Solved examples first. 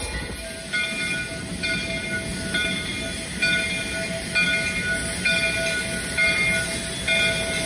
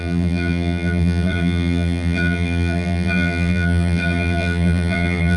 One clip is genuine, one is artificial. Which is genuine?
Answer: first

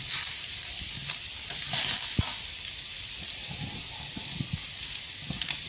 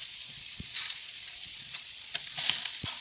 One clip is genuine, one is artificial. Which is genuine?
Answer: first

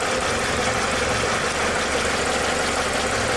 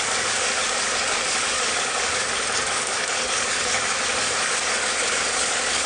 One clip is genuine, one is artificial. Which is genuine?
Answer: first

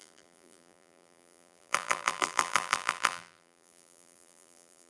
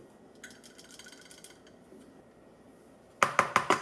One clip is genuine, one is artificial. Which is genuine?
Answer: second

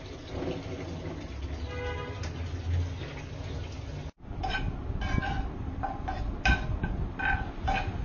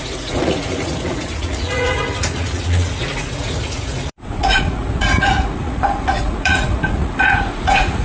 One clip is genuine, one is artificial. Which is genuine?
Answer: first